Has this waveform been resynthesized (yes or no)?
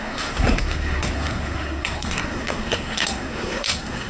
yes